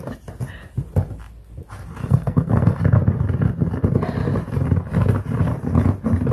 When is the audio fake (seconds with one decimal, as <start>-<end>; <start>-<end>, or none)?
2.0-2.8